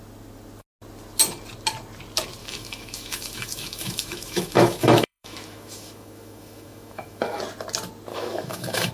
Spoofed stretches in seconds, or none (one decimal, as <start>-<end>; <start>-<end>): 2.4-7.4; 8.1-8.9